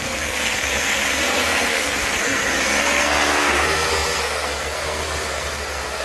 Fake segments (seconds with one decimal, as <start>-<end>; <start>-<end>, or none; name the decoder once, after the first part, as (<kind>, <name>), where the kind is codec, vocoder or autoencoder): 0.0-6.0 (codec, SNAC)

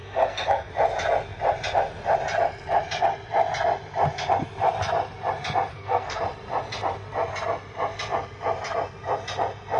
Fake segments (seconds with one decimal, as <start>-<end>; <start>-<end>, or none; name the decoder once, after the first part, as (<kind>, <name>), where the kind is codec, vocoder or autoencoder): 0.0-0.7 (codec, SNAC); 5.7-6.2

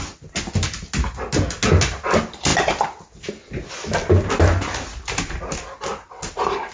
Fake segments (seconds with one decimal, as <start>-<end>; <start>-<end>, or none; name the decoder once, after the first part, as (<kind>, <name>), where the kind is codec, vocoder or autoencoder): none

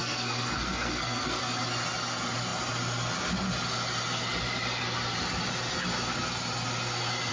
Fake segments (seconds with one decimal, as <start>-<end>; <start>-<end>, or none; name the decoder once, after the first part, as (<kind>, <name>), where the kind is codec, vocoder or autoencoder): 0.0-1.4 (codec, SNAC)

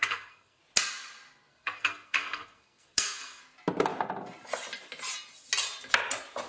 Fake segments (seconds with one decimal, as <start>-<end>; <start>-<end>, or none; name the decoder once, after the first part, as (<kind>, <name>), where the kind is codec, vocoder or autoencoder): 0.0-0.6 (codec, SNAC); 1.5-3.4